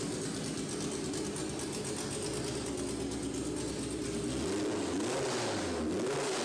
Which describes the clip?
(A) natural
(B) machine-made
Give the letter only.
A